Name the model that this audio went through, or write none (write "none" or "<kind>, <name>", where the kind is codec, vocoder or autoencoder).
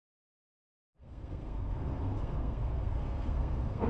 codec, SNAC